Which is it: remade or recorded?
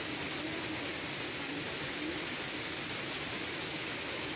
recorded